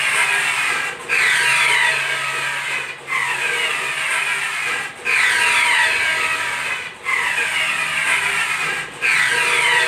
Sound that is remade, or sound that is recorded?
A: recorded